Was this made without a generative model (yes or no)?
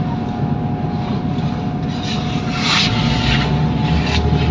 yes